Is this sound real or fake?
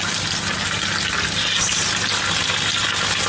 real